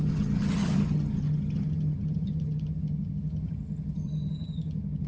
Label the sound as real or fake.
fake